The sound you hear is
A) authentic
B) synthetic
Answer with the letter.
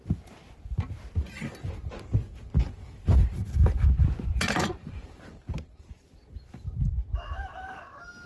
A